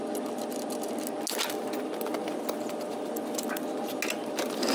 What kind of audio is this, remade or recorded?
recorded